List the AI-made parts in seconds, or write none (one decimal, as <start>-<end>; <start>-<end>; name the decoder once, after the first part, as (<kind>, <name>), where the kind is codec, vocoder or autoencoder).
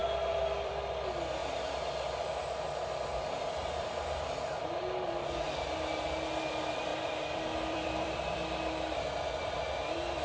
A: 0.0-0.7 (vocoder, BigVGAN v2); 1.4-2.3; 6.9-9.2